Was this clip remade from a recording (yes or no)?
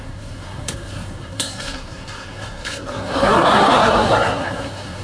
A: yes